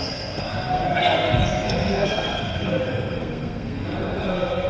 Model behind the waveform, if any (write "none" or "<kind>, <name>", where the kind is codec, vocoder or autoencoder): codec, SNAC